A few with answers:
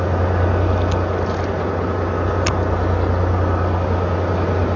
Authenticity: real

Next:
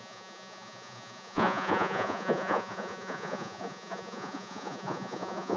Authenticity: fake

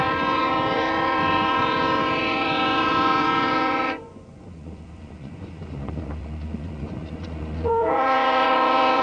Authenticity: fake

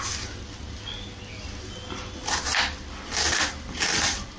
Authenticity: real